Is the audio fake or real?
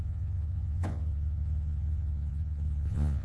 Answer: fake